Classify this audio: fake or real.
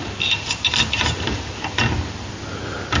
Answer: real